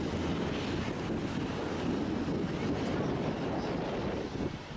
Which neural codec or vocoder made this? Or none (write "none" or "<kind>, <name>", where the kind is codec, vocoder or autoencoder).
none